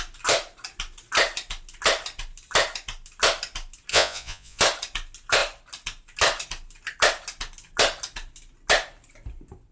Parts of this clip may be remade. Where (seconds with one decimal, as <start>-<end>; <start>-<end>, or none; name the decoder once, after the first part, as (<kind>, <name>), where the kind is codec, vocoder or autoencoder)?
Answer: 3.9-4.6 (vocoder, Vocos)